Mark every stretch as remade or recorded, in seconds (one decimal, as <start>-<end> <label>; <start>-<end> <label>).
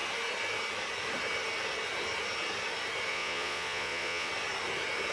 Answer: 0.0-3.1 recorded; 3.1-4.3 remade; 4.3-5.1 recorded